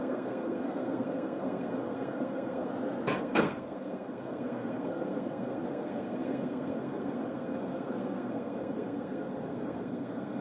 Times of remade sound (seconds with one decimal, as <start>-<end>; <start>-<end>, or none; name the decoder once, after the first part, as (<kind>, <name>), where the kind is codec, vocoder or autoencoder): 0.0-2.7 (codec, SNAC); 3.2-10.4